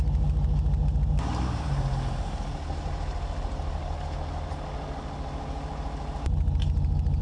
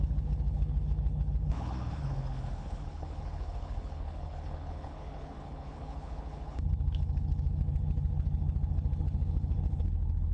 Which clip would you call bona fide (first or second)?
first